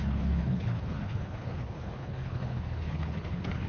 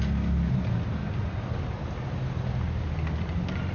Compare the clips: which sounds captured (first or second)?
second